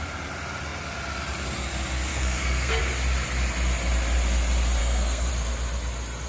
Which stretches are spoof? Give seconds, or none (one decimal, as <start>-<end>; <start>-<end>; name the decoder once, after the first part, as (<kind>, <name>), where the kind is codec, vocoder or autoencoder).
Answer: 2.1-2.8 (codec, SNAC); 4.8-5.3